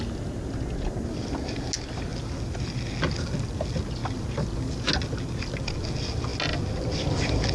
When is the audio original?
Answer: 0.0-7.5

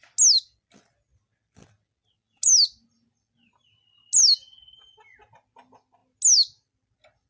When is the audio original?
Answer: 0.0-7.3

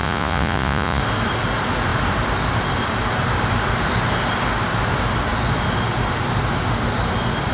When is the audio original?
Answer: 1.0-7.5